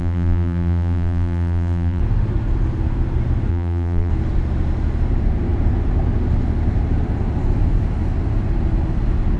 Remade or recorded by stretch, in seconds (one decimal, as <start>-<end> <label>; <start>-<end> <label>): 0.0-2.0 remade; 2.0-3.5 recorded; 3.5-4.1 remade; 4.1-9.4 recorded